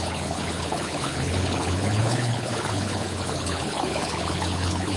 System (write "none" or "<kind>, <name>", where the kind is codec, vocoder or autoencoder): codec, HILCodec